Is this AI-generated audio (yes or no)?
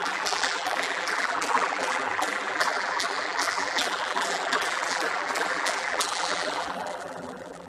yes